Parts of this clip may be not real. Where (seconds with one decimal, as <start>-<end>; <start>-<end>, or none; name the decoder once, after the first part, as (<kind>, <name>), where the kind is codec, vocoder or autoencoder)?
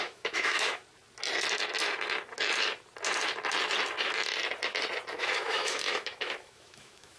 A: 0.0-0.8 (autoencoder, DAC-VAE); 5.1-7.2